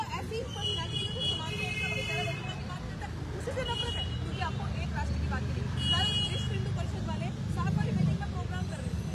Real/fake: real